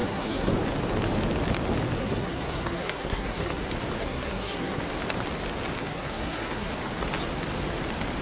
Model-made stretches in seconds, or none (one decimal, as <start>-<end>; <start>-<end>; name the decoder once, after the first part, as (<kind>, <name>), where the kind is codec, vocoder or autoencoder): 0.0-0.5 (codec, SNAC); 2.0-3.6; 4.0-4.8; 5.8-6.7